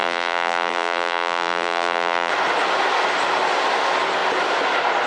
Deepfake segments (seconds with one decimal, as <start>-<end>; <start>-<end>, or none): 0.0-2.3